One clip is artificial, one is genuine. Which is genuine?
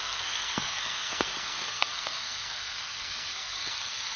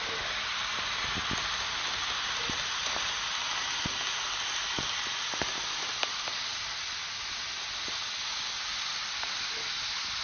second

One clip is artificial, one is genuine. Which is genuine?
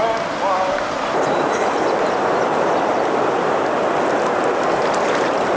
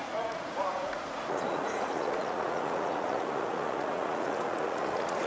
first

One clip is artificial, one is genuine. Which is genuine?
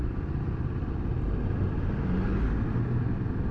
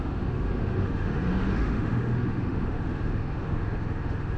first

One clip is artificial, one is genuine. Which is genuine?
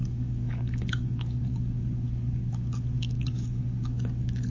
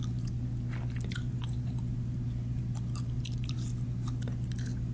second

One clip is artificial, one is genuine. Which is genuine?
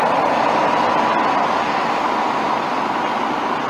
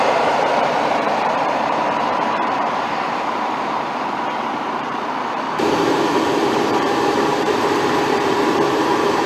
first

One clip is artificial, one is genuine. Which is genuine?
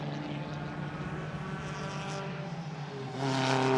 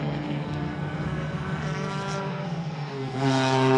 first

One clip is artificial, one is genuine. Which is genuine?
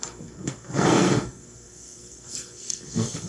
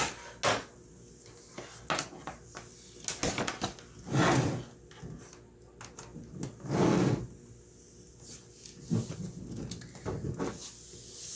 second